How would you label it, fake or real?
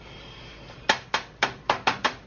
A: real